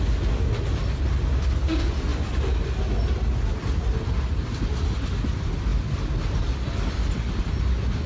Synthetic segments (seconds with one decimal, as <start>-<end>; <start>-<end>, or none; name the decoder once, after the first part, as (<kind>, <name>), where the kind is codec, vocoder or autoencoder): none